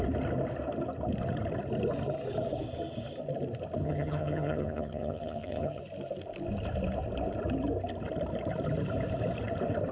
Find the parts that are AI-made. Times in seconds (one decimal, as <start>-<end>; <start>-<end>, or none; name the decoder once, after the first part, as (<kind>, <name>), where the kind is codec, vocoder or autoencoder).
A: 3.8-5.8 (vocoder, HiFi-GAN)